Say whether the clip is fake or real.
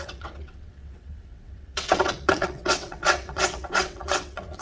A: fake